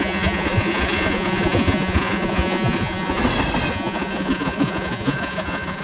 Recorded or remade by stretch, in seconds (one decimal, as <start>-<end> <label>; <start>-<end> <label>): 0.0-3.2 remade; 3.2-3.7 recorded; 3.7-5.8 remade